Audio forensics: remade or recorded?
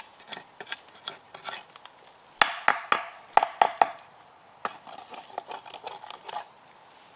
recorded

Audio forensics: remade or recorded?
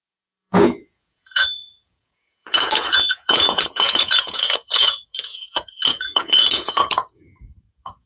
remade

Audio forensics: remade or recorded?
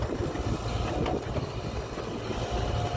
recorded